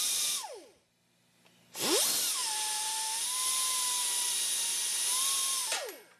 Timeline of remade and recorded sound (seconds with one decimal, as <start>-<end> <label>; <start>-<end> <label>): 0.0-5.6 recorded; 5.6-6.2 remade